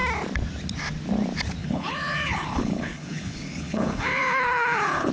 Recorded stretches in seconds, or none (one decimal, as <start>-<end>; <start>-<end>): 0.0-1.6